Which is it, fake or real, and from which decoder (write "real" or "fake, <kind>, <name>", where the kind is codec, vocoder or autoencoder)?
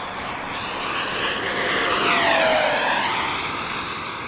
real